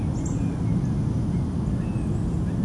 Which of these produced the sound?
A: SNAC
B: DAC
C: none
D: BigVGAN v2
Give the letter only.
C